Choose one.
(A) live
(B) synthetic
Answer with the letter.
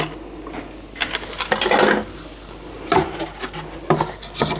A